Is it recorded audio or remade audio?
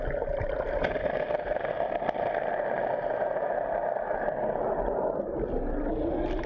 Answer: recorded